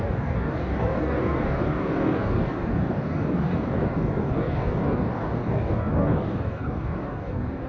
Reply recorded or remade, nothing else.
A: remade